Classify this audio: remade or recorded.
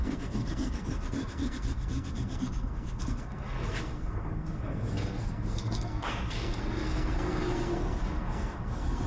remade